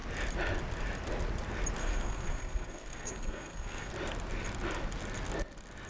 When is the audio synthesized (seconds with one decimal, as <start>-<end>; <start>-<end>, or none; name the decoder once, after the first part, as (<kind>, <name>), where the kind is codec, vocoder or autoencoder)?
1.8-3.9 (codec, SNAC)